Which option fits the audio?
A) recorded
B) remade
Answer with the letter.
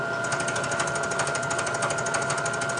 A